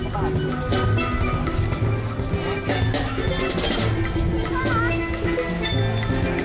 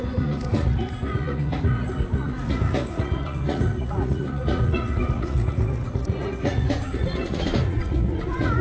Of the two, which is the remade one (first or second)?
second